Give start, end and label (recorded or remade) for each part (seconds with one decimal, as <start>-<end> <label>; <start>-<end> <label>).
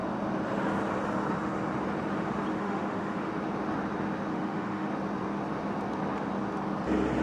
0.0-2.5 recorded; 2.5-3.3 remade; 3.3-4.3 recorded; 4.3-4.9 remade; 4.9-7.2 recorded